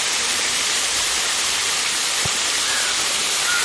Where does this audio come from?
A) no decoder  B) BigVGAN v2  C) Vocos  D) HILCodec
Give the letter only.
B